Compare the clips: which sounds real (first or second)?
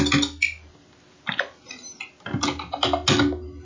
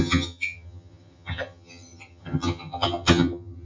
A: first